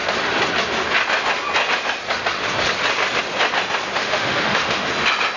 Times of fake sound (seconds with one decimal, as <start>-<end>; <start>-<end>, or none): 4.0-4.9